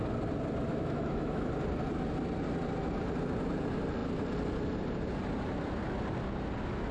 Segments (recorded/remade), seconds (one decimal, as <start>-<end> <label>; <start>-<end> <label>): 0.0-0.7 recorded; 0.7-1.5 remade; 1.5-6.9 recorded